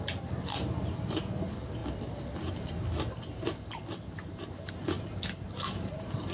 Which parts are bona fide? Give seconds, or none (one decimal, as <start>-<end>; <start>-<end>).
0.0-6.3